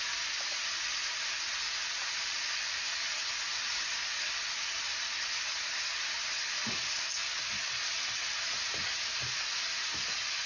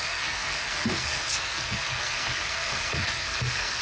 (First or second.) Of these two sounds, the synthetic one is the second